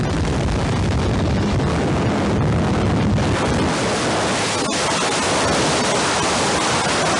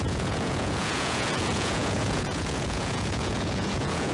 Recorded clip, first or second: first